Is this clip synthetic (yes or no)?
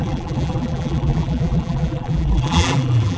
yes